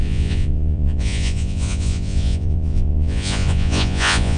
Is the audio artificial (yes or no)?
yes